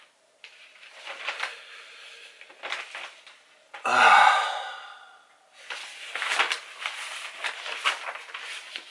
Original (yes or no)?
yes